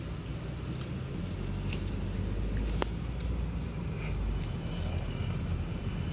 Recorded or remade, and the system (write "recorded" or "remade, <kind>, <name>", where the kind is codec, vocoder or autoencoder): recorded